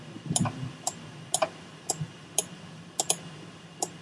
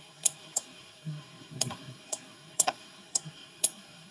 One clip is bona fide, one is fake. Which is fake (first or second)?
second